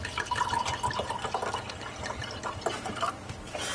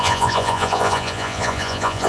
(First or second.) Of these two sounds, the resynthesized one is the second